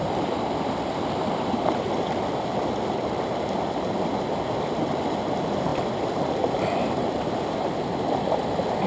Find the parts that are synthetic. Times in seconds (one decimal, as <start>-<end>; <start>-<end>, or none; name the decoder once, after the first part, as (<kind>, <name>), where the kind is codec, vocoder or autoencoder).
none